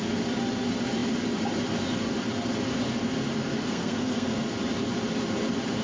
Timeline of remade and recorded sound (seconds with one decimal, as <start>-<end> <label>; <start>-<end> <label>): 0.0-3.5 recorded; 3.5-4.4 remade; 4.4-5.8 recorded